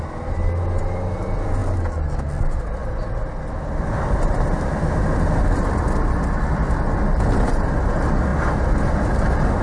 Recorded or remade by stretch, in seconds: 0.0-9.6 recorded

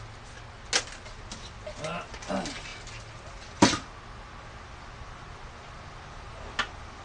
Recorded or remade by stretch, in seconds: 0.0-7.0 recorded

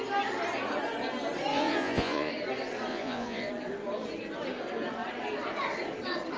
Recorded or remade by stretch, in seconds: 0.0-1.5 recorded; 1.5-2.3 remade; 2.3-2.9 recorded; 2.9-3.5 remade; 3.5-6.4 recorded

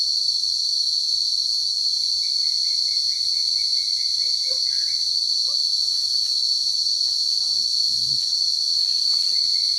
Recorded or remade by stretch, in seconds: 0.0-9.8 recorded